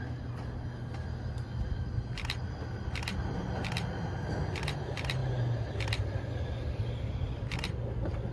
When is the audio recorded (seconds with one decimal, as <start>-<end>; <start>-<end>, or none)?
0.0-8.3